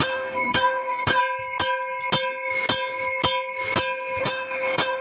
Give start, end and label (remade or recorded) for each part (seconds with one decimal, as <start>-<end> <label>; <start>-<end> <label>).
0.0-1.2 remade; 1.2-4.2 recorded; 4.2-5.0 remade